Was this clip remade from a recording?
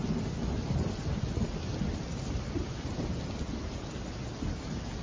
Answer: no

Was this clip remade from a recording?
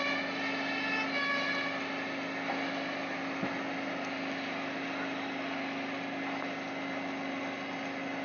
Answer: no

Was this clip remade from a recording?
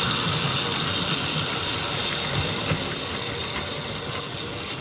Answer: no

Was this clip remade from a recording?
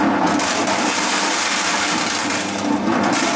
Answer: no